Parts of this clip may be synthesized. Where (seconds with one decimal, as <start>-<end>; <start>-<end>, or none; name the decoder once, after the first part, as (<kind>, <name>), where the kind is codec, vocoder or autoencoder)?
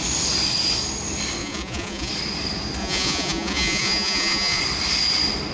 1.4-2.1 (vocoder, Vocos); 2.8-4.6